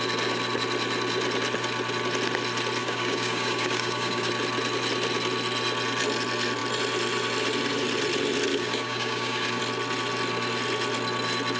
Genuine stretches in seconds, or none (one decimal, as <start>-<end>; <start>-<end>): 0.0-2.8; 4.3-8.5; 9.6-11.6